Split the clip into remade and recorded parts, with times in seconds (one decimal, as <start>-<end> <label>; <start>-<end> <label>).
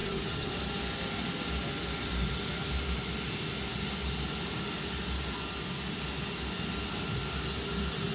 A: 0.0-0.5 remade; 0.5-8.1 recorded